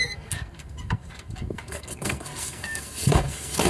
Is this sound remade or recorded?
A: remade